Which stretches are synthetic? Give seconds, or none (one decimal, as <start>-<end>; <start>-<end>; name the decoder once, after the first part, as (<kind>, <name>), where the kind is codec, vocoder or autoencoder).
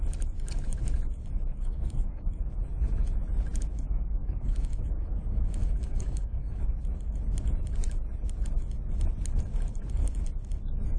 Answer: 1.5-2.4 (codec, DAC); 4.2-6.7